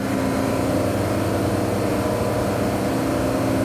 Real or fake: real